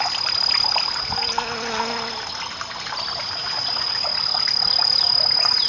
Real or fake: real